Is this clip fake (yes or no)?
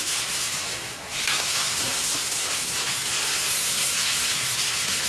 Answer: yes